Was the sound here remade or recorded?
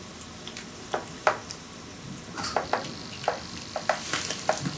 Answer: recorded